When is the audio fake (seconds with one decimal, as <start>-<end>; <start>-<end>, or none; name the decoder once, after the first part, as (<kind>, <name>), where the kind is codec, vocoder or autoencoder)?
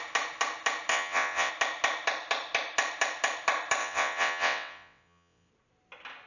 0.9-1.5 (vocoder, WaveNeXt); 3.8-5.5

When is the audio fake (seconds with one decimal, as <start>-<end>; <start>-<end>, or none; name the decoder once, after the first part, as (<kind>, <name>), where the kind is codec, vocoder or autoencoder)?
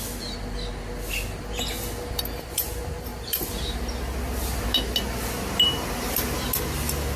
none